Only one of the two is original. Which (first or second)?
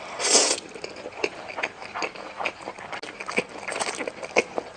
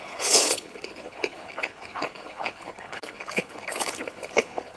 first